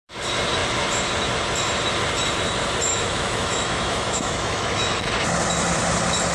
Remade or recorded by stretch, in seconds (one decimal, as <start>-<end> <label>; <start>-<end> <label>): 0.0-2.9 recorded; 2.9-5.1 remade; 5.1-6.3 recorded